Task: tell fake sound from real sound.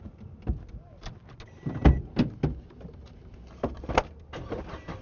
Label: real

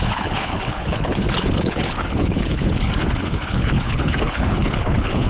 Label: fake